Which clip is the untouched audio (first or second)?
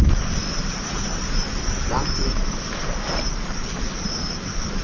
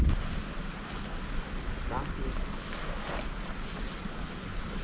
second